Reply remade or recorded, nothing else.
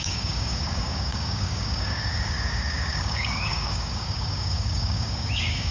remade